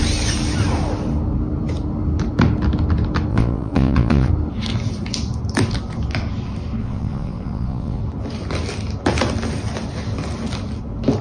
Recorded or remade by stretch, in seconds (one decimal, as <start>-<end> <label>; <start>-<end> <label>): 0.0-3.3 recorded; 3.3-4.3 remade; 4.3-6.8 recorded; 6.8-8.0 remade; 8.0-11.2 recorded